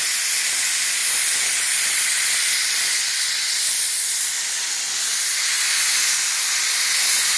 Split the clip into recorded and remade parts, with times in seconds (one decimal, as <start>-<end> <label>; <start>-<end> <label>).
0.0-1.0 recorded; 1.0-5.4 remade; 5.4-7.4 recorded